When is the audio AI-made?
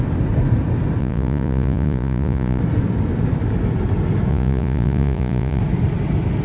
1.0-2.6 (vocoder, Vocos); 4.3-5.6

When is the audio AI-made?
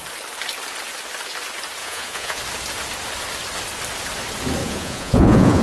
1.8-2.4 (vocoder, Vocos); 4.6-5.6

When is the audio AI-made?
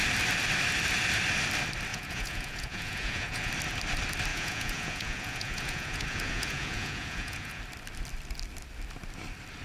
1.9-3.5 (vocoder, Vocos); 4.3-7.6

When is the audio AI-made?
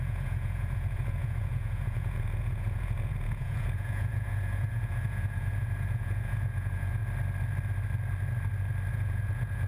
0.0-7.0 (vocoder, Vocos); 8.9-9.7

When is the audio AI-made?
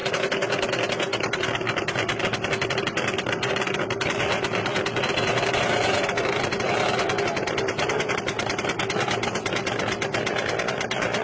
none